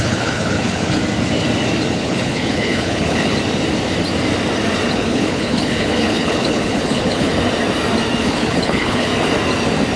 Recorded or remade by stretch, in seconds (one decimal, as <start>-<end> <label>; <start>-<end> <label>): 0.0-1.0 remade; 1.0-1.9 recorded; 1.9-3.3 remade; 3.3-4.9 recorded; 4.9-7.3 remade; 7.3-8.2 recorded; 8.2-9.1 remade; 9.1-10.0 recorded